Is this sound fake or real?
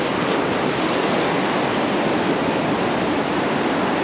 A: real